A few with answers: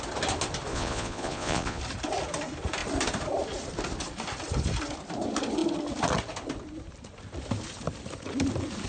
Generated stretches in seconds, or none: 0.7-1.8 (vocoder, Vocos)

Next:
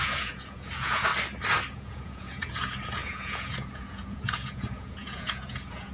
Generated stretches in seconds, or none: 0.0-1.1 (vocoder, Vocos); 1.7-5.9

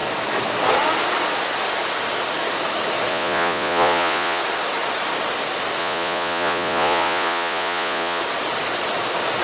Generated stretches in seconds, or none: 3.1-4.4 (vocoder, Vocos); 5.8-8.2

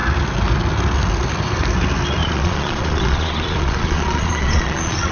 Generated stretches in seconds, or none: 2.2-5.1 (vocoder, Vocos)

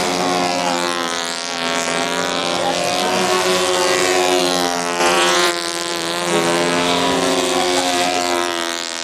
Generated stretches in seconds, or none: 5.0-5.5 (vocoder, Vocos)